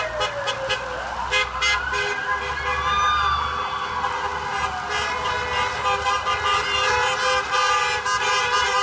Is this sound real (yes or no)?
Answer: yes